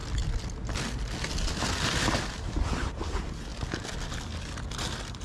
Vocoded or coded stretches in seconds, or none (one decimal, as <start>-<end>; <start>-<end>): none